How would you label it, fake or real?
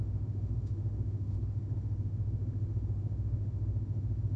fake